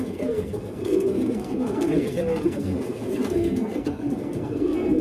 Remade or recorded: remade